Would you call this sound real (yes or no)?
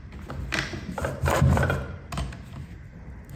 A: yes